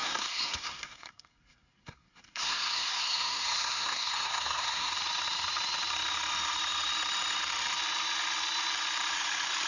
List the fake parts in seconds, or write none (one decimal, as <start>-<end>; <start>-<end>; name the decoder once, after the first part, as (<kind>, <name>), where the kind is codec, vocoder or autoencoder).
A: 0.0-4.9 (codec, SNAC)